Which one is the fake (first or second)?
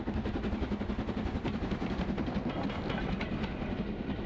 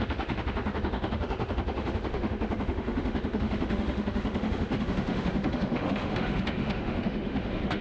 second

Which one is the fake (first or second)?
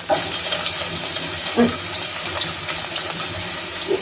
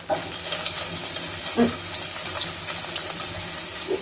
first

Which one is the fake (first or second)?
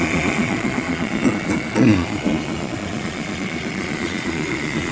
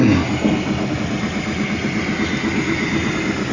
first